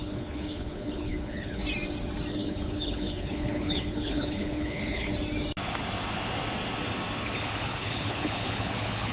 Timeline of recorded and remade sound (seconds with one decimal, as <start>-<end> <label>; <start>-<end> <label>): 0.0-1.6 remade; 1.6-2.3 recorded; 2.3-5.1 remade; 5.1-7.4 recorded; 7.4-9.1 remade